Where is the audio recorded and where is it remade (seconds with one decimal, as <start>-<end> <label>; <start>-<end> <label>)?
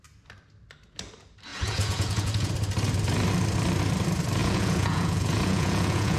0.0-1.5 recorded; 1.5-2.5 remade; 2.5-4.4 recorded; 4.4-6.2 remade